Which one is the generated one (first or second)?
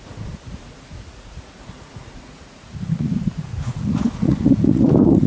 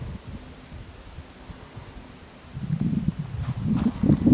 first